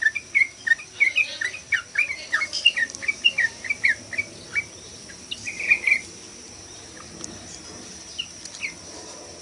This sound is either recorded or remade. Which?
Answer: recorded